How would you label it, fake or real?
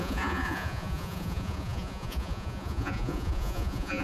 fake